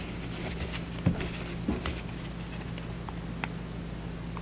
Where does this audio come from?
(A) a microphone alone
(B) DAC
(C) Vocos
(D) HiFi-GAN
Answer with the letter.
A